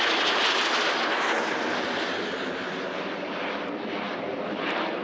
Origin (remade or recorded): recorded